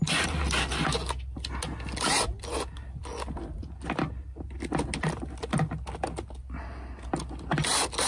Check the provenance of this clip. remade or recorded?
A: recorded